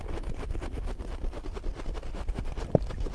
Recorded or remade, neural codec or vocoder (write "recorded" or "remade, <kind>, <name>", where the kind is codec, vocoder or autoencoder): recorded